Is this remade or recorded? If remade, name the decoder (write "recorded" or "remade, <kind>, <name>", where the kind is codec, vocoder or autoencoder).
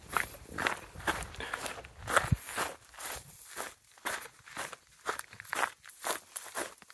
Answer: recorded